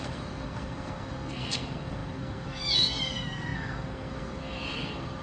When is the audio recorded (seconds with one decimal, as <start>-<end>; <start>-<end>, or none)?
none